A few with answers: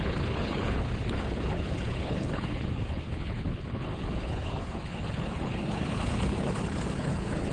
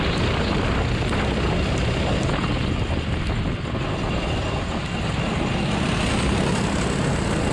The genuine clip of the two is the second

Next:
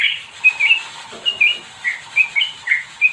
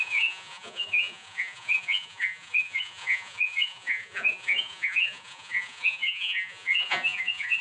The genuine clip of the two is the first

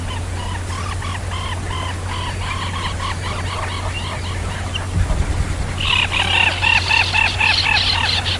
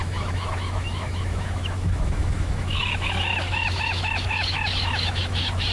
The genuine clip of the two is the first